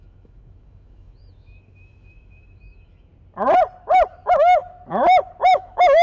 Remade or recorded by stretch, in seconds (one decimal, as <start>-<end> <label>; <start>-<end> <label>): 0.0-3.1 remade; 3.1-4.1 recorded; 4.1-4.6 remade; 4.6-5.5 recorded; 5.5-6.0 remade